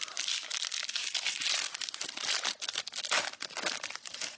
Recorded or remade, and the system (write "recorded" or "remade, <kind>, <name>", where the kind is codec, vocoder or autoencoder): recorded